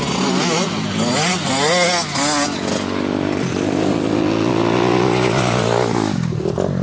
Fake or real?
real